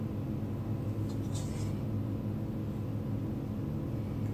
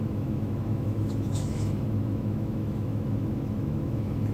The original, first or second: first